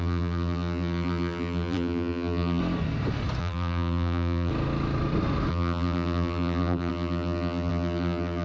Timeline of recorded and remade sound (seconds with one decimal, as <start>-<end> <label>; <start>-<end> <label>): 0.0-2.6 remade; 2.6-3.4 recorded; 3.4-4.5 remade; 4.5-5.5 recorded; 5.5-8.4 remade